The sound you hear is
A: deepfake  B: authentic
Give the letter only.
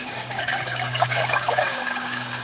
A